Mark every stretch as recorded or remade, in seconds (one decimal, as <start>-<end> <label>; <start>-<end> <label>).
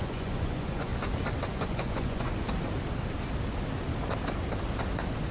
0.0-0.9 remade; 0.9-1.5 recorded; 1.5-2.3 remade; 2.3-5.3 recorded